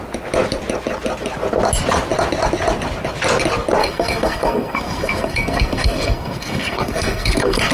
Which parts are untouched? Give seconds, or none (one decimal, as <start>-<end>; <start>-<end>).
0.0-3.8